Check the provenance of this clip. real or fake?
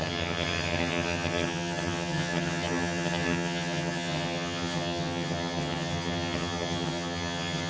fake